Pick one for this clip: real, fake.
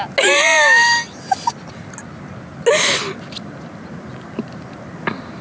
real